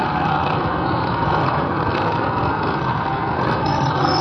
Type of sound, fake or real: fake